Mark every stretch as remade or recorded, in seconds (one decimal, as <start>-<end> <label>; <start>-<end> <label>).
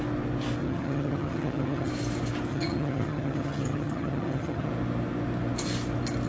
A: 0.0-0.6 recorded; 0.6-1.9 remade; 1.9-2.5 recorded; 2.5-4.7 remade; 4.7-6.3 recorded